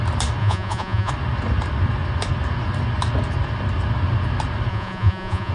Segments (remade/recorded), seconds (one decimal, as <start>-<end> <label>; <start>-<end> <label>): 0.0-0.4 recorded; 0.4-1.1 remade; 1.1-4.7 recorded; 4.7-5.5 remade